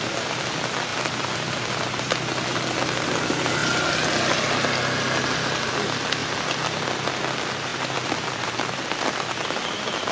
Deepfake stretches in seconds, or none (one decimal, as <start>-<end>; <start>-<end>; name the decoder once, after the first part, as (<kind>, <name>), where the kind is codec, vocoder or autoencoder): 0.9-2.0 (vocoder, BigVGAN v2); 7.7-9.6